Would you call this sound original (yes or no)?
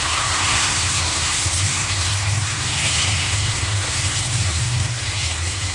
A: no